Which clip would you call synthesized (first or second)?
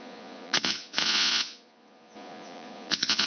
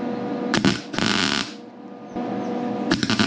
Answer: first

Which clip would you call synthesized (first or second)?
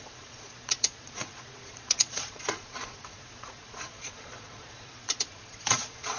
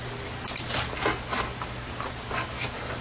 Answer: first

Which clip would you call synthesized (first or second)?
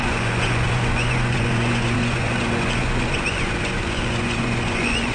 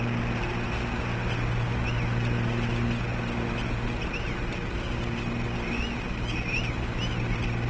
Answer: first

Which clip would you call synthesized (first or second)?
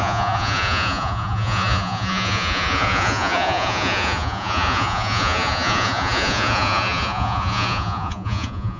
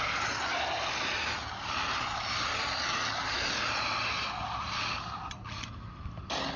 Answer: first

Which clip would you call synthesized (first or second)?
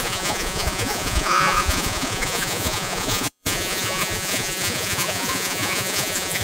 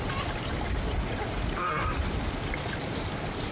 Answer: first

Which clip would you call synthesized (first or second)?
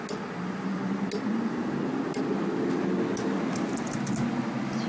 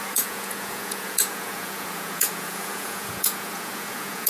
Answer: second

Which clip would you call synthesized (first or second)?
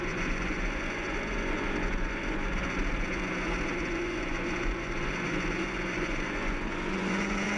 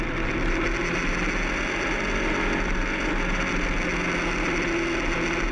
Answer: first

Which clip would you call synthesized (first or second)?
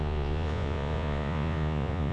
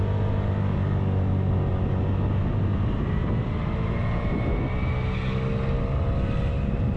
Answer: first